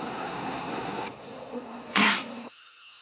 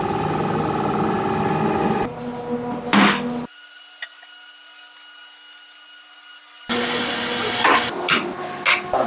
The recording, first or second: second